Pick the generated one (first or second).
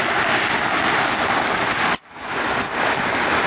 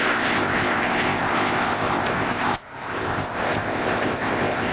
second